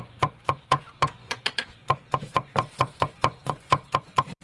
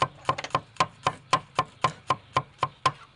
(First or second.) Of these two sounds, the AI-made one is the first